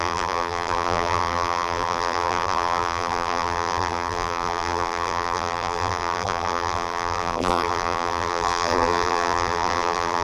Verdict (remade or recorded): remade